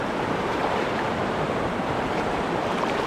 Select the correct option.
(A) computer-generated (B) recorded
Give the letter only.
A